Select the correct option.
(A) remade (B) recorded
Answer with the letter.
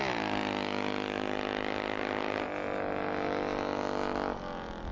B